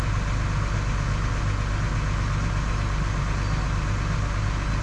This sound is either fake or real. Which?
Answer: real